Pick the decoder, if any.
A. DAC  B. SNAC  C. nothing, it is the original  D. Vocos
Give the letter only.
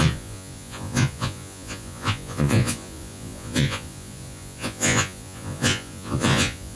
D